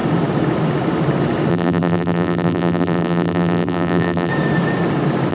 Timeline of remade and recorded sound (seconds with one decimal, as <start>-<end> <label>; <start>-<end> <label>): 0.0-1.5 recorded; 1.5-4.3 remade; 4.3-5.3 recorded